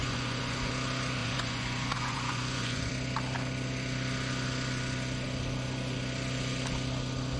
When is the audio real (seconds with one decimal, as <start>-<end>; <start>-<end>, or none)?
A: 0.7-1.2; 2.9-7.4